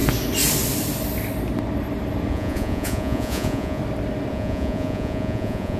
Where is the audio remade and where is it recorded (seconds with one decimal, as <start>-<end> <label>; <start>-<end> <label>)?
0.0-2.3 recorded; 2.3-3.8 remade; 3.8-4.3 recorded; 4.3-5.8 remade